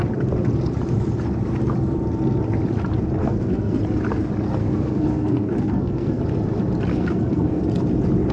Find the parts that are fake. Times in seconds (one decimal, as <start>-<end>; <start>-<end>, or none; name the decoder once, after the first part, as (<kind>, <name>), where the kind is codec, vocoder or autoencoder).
3.2-3.8 (codec, SNAC); 4.6-6.2; 6.9-7.6